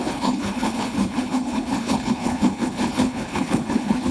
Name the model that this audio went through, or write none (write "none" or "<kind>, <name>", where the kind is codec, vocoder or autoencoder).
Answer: codec, HILCodec